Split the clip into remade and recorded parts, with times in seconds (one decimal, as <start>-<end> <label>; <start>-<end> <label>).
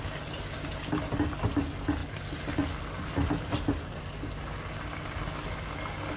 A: 0.0-6.2 recorded